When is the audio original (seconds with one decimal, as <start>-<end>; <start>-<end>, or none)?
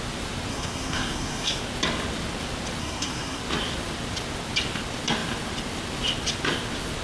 0.0-0.5; 1.6-2.8; 3.4-7.0